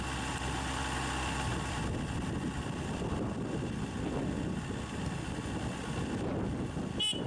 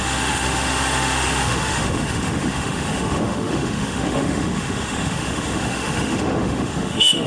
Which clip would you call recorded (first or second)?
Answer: first